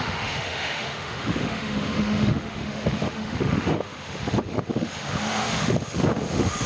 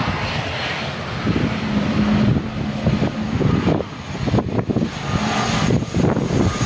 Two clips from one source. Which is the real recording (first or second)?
second